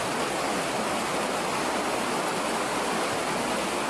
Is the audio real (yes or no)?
yes